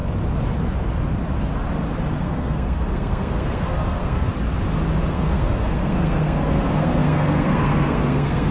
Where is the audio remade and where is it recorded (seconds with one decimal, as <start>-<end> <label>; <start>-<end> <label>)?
0.0-2.2 recorded; 2.2-4.3 remade; 4.3-5.1 recorded; 5.1-8.5 remade